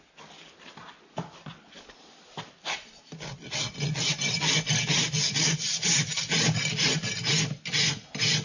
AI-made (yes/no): no